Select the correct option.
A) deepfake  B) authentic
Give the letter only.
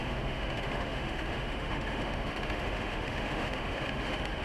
A